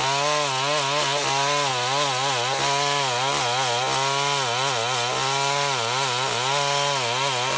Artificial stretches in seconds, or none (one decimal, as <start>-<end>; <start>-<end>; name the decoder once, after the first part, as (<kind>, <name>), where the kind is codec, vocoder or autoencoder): none